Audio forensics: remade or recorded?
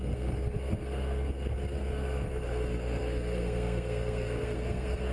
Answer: remade